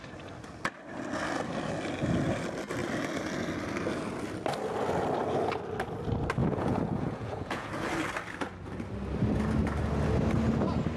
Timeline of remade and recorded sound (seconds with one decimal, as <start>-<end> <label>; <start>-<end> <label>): 0.0-6.4 recorded; 6.4-7.7 remade; 7.7-11.0 recorded